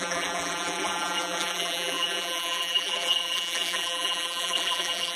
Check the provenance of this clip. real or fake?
fake